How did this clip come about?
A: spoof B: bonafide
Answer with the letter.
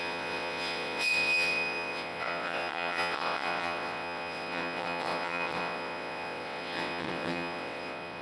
A